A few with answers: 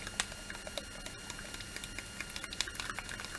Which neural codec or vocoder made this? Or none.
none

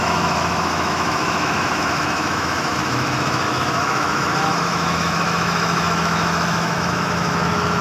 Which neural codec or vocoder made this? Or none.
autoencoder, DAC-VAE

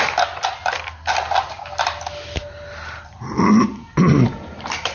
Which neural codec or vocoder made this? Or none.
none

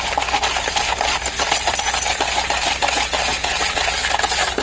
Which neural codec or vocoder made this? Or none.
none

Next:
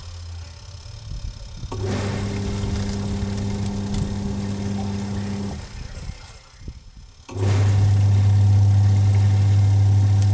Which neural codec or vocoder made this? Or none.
none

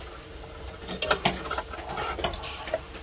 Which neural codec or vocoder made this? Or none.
none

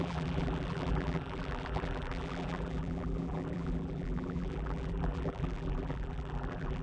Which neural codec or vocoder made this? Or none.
vocoder, BigVGAN v2